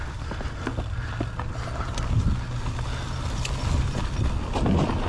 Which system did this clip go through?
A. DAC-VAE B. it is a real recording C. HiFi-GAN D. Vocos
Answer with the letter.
B